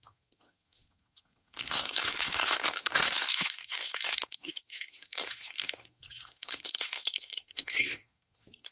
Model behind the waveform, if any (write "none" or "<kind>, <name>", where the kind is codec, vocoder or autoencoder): codec, SNAC